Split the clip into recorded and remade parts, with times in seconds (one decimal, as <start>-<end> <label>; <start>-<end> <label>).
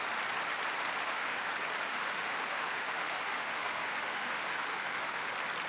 0.0-1.0 recorded; 1.0-1.5 remade; 1.5-1.9 recorded; 1.9-5.3 remade; 5.3-5.7 recorded